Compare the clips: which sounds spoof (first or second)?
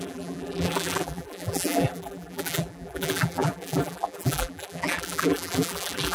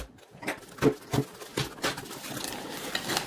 first